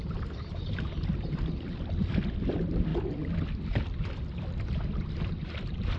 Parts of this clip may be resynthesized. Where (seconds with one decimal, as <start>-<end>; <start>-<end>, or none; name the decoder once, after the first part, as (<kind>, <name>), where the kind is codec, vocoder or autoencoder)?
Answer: 0.0-6.0 (vocoder, BigVGAN v2)